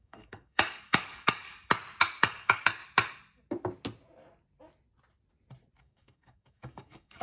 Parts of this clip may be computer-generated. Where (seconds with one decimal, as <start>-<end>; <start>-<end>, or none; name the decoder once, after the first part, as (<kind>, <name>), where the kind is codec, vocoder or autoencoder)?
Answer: 0.0-1.5 (codec, DAC); 2.2-2.8; 5.8-7.2